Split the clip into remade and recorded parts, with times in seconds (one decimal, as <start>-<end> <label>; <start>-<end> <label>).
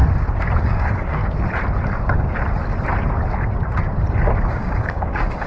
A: 0.0-0.6 recorded; 0.6-1.2 remade; 1.2-4.5 recorded; 4.5-5.5 remade